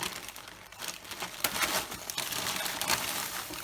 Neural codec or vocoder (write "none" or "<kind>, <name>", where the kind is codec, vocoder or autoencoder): none